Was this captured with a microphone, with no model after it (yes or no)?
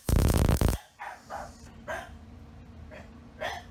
no